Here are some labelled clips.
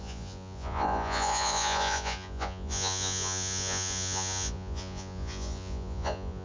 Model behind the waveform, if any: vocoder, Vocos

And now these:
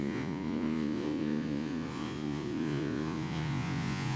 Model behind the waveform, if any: vocoder, Vocos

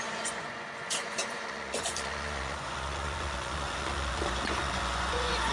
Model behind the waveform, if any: vocoder, Vocos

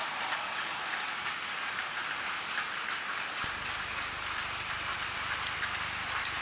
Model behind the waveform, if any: none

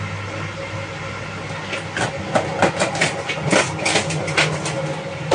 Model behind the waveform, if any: none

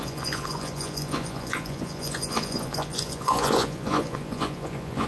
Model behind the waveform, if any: vocoder, Vocos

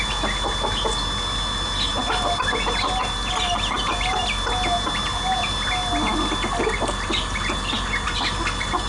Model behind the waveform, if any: none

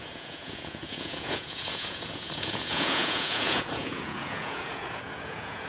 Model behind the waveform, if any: vocoder, Vocos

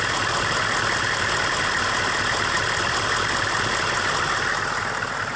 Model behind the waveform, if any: none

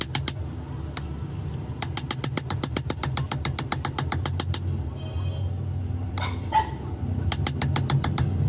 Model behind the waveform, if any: none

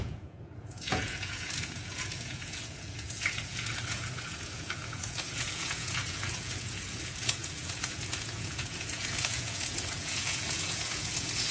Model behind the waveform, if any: vocoder, Vocos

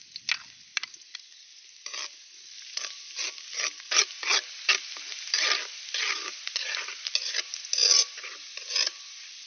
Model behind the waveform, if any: none